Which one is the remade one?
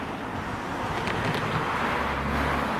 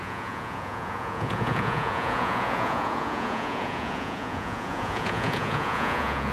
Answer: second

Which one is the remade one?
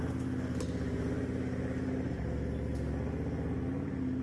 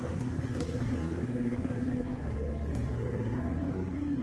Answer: second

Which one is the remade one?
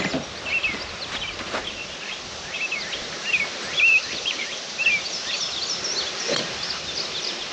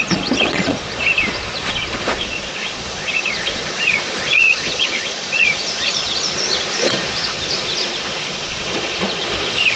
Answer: second